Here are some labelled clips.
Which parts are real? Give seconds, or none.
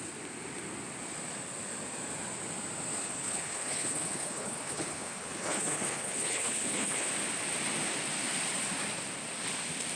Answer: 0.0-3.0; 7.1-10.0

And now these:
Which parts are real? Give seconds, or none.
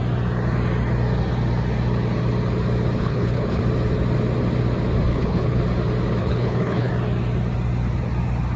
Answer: 0.0-3.0; 3.6-5.1; 5.6-6.2; 6.9-8.6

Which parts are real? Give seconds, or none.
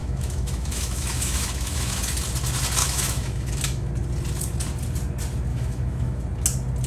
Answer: 2.0-2.8; 3.9-5.5; 6.2-6.9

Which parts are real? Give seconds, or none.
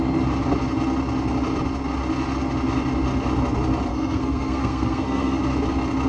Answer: 0.0-3.9; 5.4-6.1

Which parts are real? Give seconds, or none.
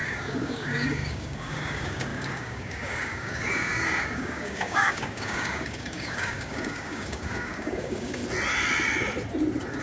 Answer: 8.2-9.8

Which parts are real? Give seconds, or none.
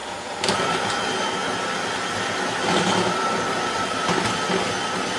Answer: 0.0-5.2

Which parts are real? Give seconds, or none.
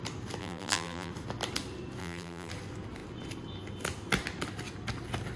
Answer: 0.0-0.4; 1.1-2.0; 2.5-5.4